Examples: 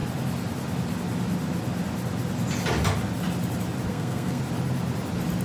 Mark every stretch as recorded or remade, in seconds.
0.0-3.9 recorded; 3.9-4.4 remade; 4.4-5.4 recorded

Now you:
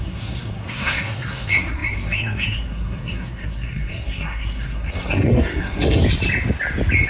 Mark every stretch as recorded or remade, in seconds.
0.0-6.0 remade; 6.0-7.1 recorded